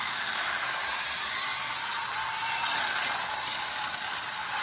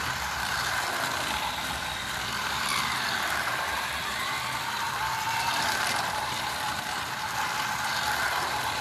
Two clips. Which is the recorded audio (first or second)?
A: first